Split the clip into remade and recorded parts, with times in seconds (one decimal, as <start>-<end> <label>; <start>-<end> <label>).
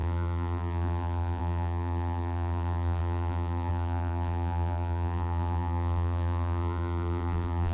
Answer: 0.0-7.7 remade